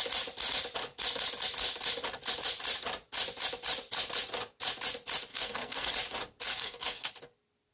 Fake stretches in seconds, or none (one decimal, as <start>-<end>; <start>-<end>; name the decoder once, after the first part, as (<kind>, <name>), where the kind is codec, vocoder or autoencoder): 5.3-5.9 (codec, SNAC); 6.5-7.1